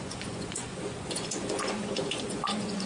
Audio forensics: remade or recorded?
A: remade